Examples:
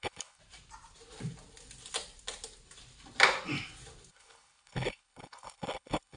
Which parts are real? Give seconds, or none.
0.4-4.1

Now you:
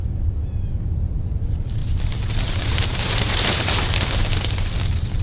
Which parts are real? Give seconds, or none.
0.0-1.8; 4.1-5.2

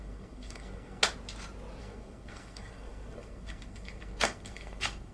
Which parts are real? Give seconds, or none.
1.0-1.8

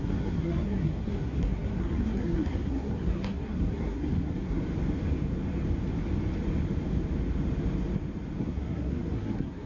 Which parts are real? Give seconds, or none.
4.6-8.4